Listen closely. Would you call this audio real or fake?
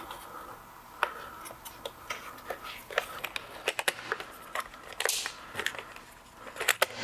real